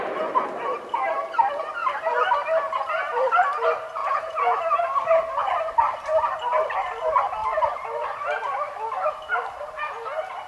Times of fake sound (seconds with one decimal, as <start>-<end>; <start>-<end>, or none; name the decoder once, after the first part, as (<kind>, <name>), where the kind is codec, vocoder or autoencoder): 4.0-4.6 (vocoder, Vocos)